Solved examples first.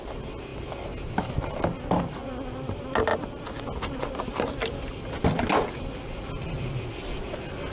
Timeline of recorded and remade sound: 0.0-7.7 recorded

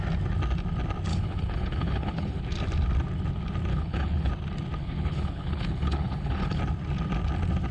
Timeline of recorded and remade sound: 0.0-1.1 recorded; 1.1-2.4 remade; 2.4-3.7 recorded; 3.7-4.3 remade; 4.3-4.8 recorded; 4.8-6.6 remade; 6.6-7.7 recorded

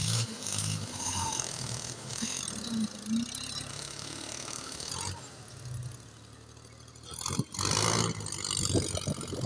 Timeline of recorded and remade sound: 0.0-2.4 remade; 2.4-3.7 recorded; 3.7-4.9 remade; 4.9-9.5 recorded

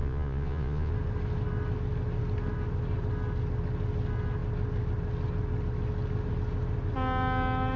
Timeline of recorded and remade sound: 0.0-0.9 remade; 0.9-7.8 recorded

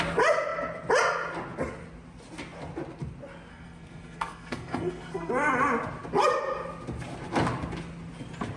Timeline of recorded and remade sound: 0.0-3.5 recorded; 3.5-5.3 remade; 5.3-8.6 recorded